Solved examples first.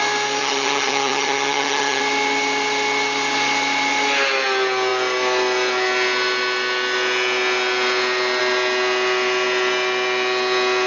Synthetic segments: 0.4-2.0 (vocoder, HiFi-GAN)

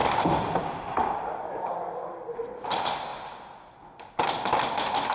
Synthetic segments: 0.0-3.1 (vocoder, BigVGAN v2); 4.2-5.1

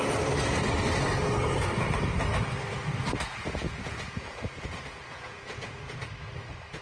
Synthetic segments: 3.6-6.0 (vocoder, Vocos)

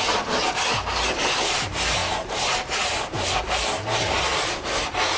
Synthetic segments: none

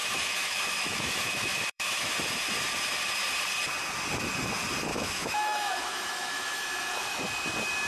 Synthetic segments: 0.0-2.1 (autoencoder, DAC-VAE); 4.9-7.2

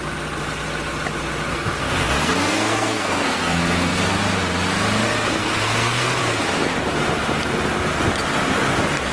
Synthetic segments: 1.5-4.2 (codec, SNAC); 5.4-6.2

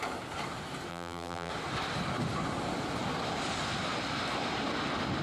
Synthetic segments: 0.9-1.5 (vocoder, BigVGAN v2)

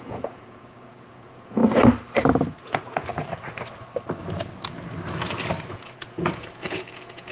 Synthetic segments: 0.0-1.6 (vocoder, Vocos); 2.6-3.1; 5.7-7.3